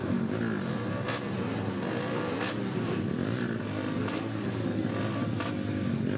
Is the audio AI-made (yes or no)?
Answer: no